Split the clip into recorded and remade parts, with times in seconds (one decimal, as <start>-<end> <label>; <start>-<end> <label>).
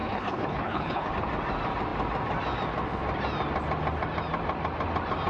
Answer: 0.0-1.1 remade; 1.1-5.3 recorded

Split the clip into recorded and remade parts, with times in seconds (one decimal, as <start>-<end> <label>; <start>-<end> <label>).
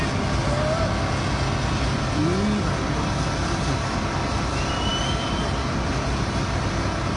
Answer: 0.0-7.2 recorded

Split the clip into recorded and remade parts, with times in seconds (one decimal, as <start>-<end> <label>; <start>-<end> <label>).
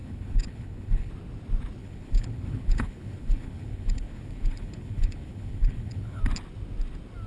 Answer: 0.0-1.1 remade; 1.1-1.8 recorded; 1.8-6.2 remade; 6.2-7.3 recorded